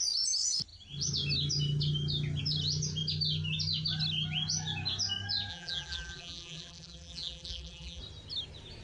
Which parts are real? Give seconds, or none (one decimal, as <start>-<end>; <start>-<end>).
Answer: 0.0-5.5; 8.0-8.8